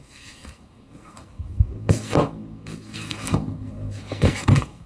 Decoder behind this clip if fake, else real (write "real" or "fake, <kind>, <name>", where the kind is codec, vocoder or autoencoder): fake, codec, SNAC